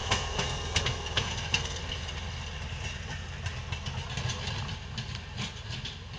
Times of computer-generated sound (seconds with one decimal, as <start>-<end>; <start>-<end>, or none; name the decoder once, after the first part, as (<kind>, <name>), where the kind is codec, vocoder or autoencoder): 0.0-1.8 (codec, SNAC)